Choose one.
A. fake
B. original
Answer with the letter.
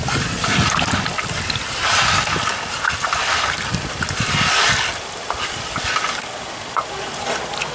B